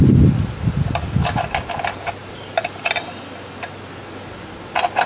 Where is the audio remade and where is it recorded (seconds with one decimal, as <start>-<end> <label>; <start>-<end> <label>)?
0.0-2.2 recorded; 2.2-2.8 remade; 2.8-5.1 recorded